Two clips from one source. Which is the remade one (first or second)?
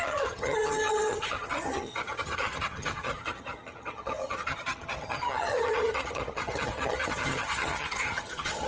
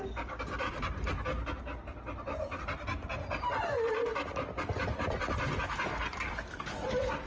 first